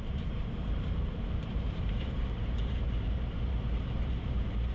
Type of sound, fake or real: fake